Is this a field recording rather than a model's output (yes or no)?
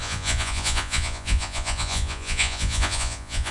no